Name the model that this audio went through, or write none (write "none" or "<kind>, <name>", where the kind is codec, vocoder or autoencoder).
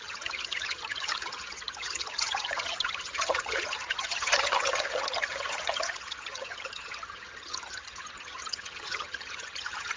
vocoder, HiFi-GAN